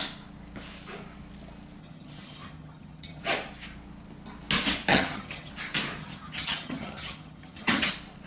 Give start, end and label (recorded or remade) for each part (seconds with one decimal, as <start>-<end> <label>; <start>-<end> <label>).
0.0-1.8 recorded; 1.8-3.2 remade; 3.2-4.9 recorded; 4.9-5.5 remade; 5.5-6.0 recorded; 6.0-7.9 remade; 7.9-8.3 recorded